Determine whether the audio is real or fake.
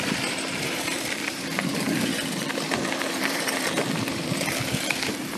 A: fake